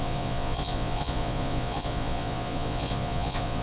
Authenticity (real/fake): fake